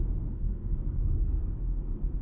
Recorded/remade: remade